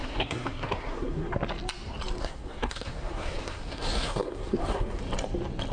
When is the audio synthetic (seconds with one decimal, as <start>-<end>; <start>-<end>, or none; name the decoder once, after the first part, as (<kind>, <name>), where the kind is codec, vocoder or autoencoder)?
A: 0.0-1.3 (codec, SNAC); 2.2-5.0

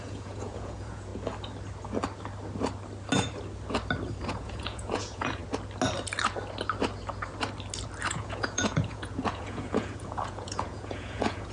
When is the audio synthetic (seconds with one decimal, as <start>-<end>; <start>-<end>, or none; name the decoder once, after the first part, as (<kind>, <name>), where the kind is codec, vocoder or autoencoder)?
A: 0.0-1.1 (vocoder, Vocos); 4.3-5.4; 8.1-11.5

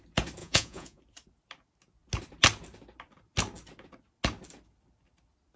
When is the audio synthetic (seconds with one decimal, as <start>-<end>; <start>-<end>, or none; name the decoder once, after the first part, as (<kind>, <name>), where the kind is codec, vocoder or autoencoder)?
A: 0.4-1.0 (vocoder, Vocos)

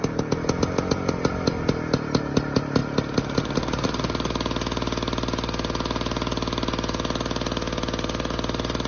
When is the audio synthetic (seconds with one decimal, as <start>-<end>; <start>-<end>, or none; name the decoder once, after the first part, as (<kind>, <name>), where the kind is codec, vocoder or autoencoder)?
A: none

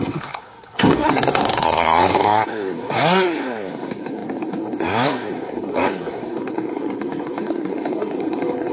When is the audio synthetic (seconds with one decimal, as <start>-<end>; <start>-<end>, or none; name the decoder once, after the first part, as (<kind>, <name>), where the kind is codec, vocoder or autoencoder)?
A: 0.0-8.7 (codec, SNAC)